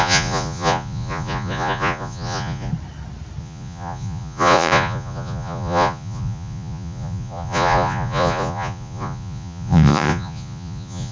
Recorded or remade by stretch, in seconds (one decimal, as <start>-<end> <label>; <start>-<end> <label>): 0.0-2.7 remade; 2.7-3.4 recorded; 3.4-11.1 remade